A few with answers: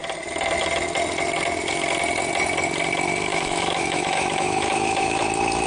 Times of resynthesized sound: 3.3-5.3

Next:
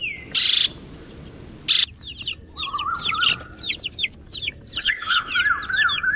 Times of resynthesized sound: 4.8-5.3

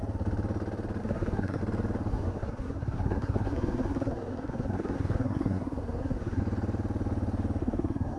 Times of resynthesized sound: 1.0-1.6; 2.1-6.4; 7.6-8.2

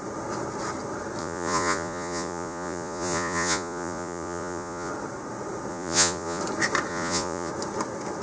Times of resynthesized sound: 1.2-4.9; 5.7-6.4; 6.9-7.5

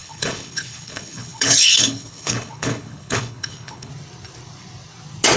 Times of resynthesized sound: 0.0-3.9

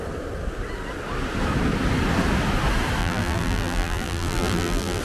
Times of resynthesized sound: 3.0-5.0

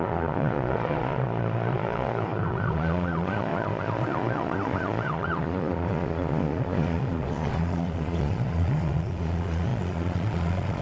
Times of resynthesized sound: 0.0-10.8

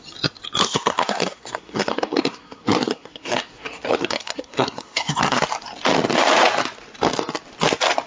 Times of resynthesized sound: 0.6-5.4